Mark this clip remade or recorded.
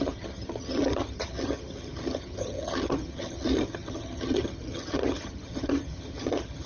remade